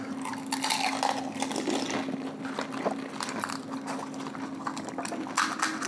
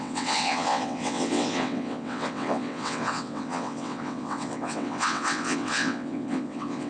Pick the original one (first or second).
first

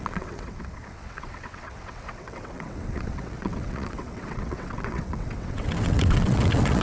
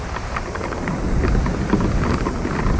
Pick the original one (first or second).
second